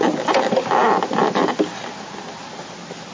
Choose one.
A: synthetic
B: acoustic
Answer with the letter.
B